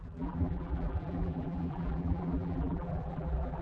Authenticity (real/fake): fake